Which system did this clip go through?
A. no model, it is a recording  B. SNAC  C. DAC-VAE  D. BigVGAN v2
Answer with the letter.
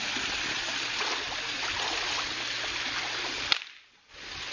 A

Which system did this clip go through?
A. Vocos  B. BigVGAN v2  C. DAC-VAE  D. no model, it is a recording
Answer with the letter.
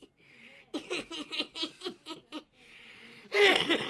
D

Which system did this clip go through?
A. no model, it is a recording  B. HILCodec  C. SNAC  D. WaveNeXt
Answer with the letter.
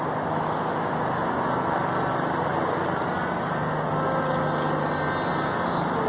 A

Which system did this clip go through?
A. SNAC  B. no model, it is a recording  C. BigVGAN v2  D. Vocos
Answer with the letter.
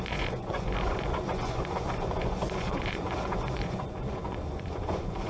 D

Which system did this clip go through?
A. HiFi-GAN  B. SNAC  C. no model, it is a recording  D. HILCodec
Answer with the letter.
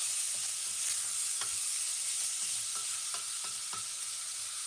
C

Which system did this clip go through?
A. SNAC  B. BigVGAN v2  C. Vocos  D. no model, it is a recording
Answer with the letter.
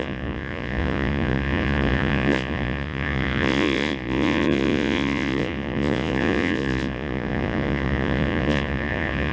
C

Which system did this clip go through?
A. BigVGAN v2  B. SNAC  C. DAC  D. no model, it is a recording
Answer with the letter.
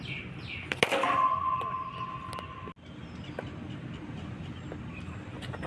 D